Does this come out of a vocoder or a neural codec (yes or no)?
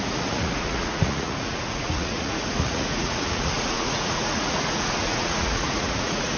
yes